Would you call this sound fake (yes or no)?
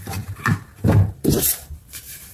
yes